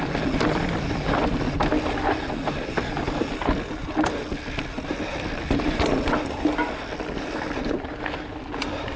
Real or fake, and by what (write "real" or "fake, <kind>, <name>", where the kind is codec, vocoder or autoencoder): real